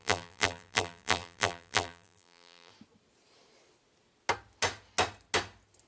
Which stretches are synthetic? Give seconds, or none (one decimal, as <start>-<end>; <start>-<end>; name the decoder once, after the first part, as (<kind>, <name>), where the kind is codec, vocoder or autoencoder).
0.0-2.7 (vocoder, BigVGAN v2)